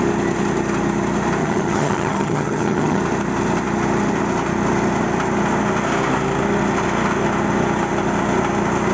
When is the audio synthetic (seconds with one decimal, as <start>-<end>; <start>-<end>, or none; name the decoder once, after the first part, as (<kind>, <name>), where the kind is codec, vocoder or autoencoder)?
1.4-3.0 (vocoder, HiFi-GAN)